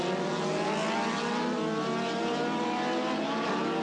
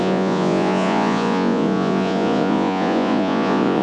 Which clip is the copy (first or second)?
second